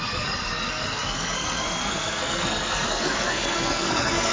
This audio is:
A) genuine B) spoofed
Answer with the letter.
B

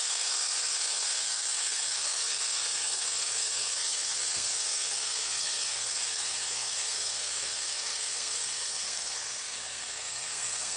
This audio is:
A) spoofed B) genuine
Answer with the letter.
A